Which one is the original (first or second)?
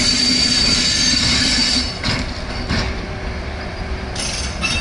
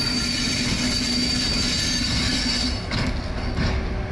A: second